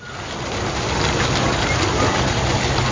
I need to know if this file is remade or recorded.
recorded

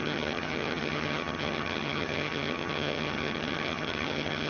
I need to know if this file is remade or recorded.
remade